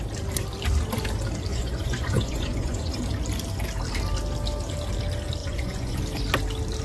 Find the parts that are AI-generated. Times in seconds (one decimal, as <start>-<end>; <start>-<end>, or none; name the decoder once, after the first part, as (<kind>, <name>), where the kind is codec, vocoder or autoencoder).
1.5-3.0 (vocoder, Vocos); 5.4-6.0